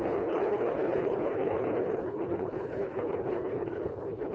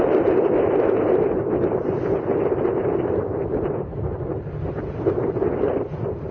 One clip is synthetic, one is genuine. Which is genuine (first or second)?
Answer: second